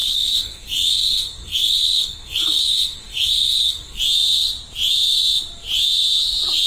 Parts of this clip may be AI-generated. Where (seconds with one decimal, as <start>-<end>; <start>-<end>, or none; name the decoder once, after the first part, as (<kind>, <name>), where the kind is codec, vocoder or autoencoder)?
0.0-4.0 (codec, SNAC)